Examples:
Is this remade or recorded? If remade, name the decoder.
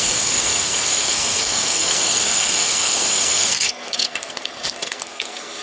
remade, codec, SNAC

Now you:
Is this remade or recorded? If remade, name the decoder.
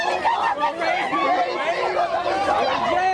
recorded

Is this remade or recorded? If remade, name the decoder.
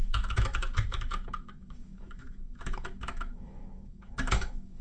remade, autoencoder, DAC-VAE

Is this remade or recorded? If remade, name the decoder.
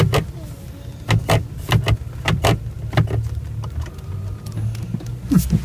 recorded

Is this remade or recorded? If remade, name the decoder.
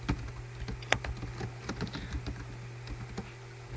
recorded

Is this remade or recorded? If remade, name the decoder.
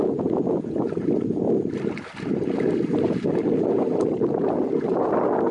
recorded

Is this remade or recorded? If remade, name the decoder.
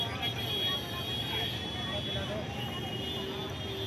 recorded